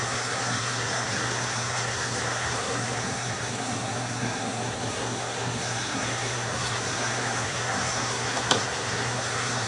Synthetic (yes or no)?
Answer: yes